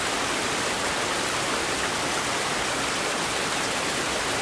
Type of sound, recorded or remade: remade